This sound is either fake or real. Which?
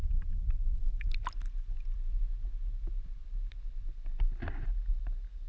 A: real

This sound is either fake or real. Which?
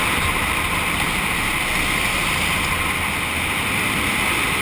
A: real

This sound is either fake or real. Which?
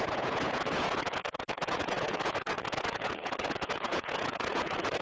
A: fake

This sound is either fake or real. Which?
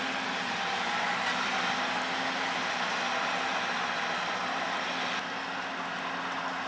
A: real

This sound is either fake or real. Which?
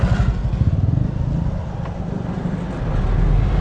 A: real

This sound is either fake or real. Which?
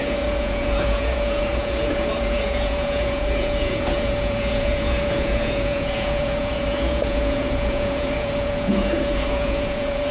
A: fake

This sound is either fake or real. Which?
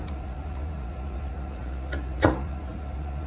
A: fake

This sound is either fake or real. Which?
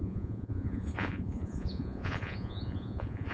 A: fake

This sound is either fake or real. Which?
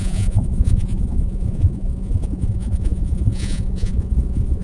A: fake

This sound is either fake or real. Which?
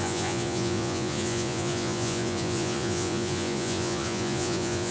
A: fake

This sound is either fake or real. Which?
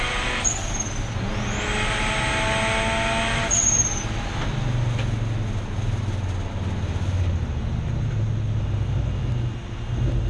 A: real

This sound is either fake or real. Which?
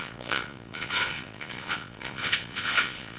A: fake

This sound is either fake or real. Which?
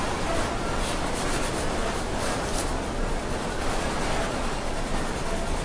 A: real